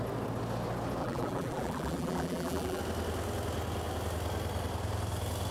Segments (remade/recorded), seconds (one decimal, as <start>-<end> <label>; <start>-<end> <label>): 0.0-1.0 recorded; 1.0-2.8 remade; 2.8-5.5 recorded